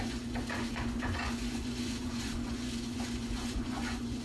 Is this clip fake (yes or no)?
yes